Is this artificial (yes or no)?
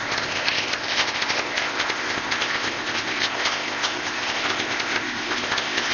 yes